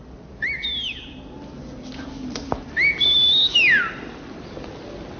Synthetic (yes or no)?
no